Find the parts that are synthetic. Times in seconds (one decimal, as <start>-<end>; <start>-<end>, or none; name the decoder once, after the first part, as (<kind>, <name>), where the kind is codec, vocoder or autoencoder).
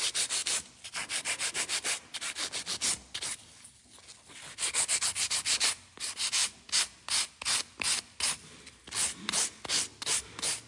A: none